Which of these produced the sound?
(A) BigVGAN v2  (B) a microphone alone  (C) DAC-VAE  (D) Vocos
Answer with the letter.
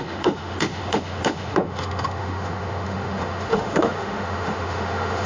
C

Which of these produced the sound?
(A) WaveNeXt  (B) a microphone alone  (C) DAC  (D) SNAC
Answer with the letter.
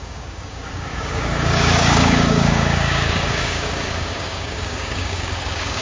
C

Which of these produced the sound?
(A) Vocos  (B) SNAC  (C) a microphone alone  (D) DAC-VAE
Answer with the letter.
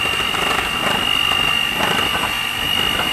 C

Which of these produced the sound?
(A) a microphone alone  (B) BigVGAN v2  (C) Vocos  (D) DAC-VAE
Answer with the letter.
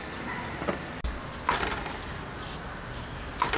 A